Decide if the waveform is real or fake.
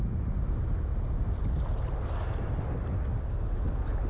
real